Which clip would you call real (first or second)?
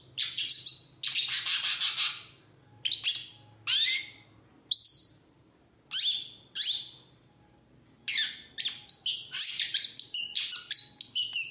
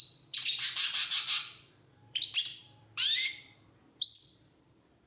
first